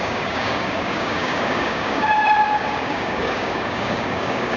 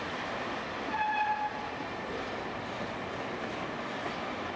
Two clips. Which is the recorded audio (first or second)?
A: second